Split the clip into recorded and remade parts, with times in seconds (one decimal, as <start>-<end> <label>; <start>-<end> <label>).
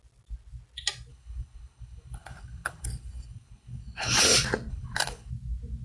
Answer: 0.0-1.1 recorded; 1.1-4.1 remade; 4.1-4.7 recorded; 4.7-5.3 remade; 5.3-5.8 recorded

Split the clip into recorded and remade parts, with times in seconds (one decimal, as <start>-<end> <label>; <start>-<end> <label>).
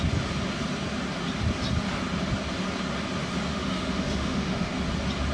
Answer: 0.0-3.5 recorded; 3.5-4.8 remade; 4.8-5.3 recorded